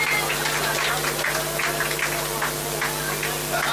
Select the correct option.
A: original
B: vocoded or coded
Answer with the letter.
A